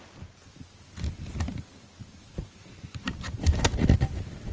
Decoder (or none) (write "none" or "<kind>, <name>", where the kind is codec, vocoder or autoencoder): none